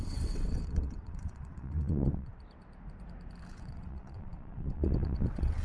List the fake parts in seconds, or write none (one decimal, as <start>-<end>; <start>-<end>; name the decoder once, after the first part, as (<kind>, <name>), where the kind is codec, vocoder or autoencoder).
0.0-2.3 (vocoder, WaveNeXt); 3.5-5.6